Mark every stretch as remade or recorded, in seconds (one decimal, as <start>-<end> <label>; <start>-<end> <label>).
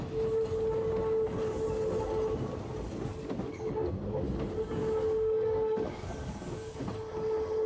0.0-3.1 recorded; 3.1-3.7 remade; 3.7-4.8 recorded; 4.8-6.8 remade; 6.8-7.7 recorded